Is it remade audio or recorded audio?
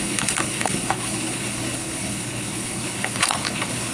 remade